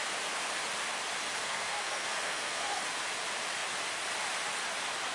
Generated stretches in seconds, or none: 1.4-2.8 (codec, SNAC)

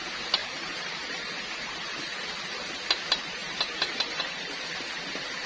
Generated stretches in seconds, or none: 0.4-1.3 (vocoder, BigVGAN v2); 3.4-4.6

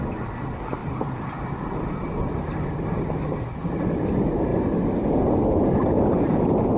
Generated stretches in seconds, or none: 0.8-1.9 (vocoder, BigVGAN v2); 4.5-5.9

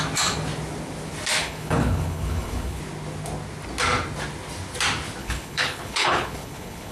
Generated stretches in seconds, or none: 1.4-2.8 (codec, HILCodec); 5.2-6.9

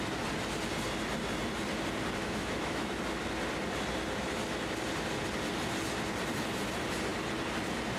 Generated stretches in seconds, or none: 2.2-3.0 (autoencoder, DAC-VAE)

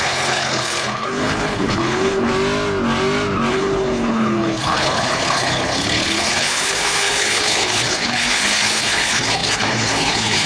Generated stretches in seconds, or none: 0.0-2.3 (codec, HILCodec); 3.5-10.5

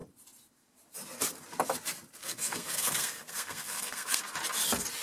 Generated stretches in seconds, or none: 2.2-4.2 (codec, SNAC)

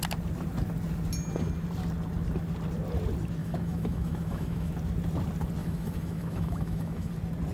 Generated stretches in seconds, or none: 3.4-4.7 (autoencoder, DAC-VAE); 5.6-7.1